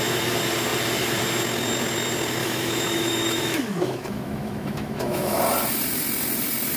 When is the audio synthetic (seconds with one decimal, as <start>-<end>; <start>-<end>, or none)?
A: 2.4-5.4